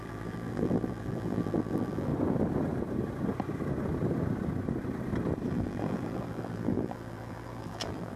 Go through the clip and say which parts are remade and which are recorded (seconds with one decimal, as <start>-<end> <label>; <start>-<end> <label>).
0.0-2.1 remade; 2.1-5.5 recorded; 5.5-8.2 remade